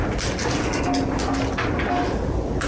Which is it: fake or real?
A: real